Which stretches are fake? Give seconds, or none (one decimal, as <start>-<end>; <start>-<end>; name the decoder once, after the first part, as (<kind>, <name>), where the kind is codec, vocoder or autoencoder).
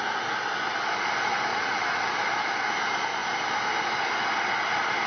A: 1.5-2.1 (vocoder, WaveNeXt)